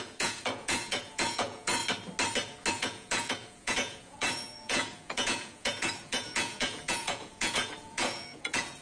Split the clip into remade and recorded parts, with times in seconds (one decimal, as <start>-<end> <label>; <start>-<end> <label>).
0.0-1.8 remade; 1.8-2.7 recorded; 2.7-8.8 remade